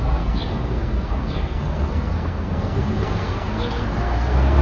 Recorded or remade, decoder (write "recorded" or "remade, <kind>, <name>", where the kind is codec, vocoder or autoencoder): remade, codec, SNAC